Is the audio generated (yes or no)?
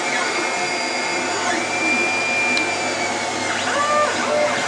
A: no